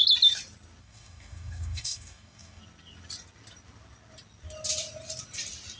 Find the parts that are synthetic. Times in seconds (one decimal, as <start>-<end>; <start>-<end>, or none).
0.8-2.6